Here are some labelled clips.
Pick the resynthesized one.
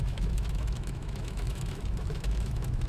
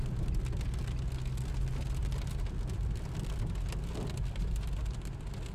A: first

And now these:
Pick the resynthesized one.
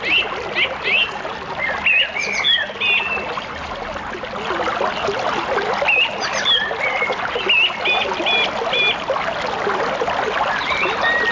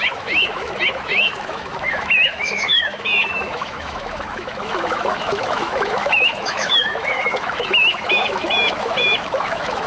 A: second